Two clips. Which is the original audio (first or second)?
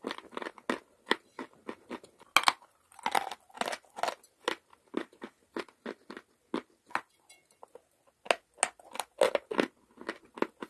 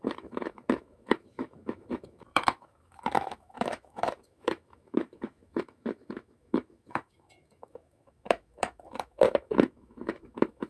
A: first